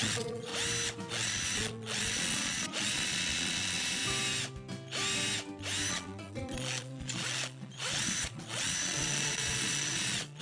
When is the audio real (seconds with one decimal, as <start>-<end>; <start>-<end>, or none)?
0.5-1.1; 4.0-5.9